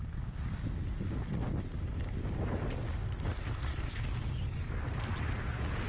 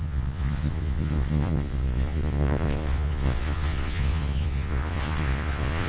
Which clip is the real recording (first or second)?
first